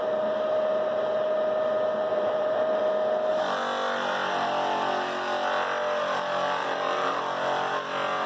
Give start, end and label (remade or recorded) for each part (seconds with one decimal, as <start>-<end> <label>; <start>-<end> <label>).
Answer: 0.0-2.1 recorded; 2.1-2.9 remade; 2.9-6.6 recorded; 6.6-7.2 remade; 7.2-8.3 recorded